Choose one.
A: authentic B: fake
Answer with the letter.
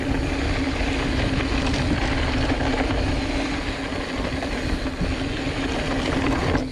A